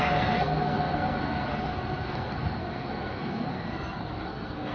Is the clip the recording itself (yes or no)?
no